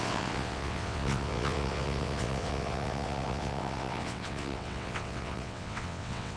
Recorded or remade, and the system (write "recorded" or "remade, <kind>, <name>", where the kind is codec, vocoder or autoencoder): remade, vocoder, WaveNeXt